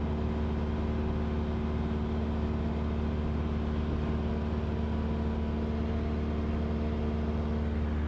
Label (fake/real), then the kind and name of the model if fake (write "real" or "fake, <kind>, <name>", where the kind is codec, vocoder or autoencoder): real